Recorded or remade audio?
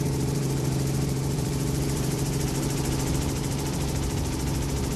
remade